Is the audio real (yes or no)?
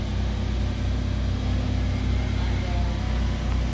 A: yes